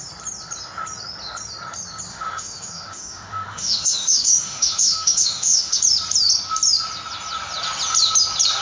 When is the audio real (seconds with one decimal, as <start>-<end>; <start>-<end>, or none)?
0.0-2.1; 5.8-8.6